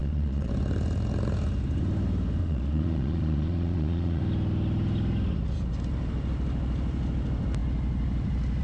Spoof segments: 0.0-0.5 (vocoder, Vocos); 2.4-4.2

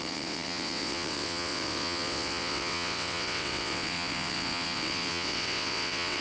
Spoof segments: 0.0-6.2 (vocoder, WaveNeXt)

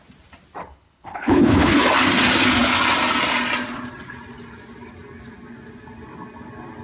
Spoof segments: 0.6-1.8 (codec, HILCodec)

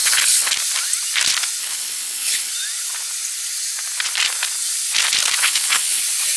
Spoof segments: 0.0-0.5 (codec, HILCodec); 1.6-2.5; 5.4-6.0

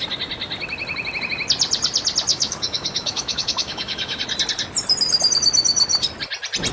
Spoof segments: 2.3-4.2 (autoencoder, DAC-VAE)